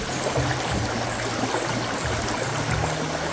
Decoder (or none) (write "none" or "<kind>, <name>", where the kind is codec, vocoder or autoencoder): none